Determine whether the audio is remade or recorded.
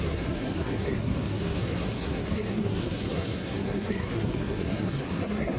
remade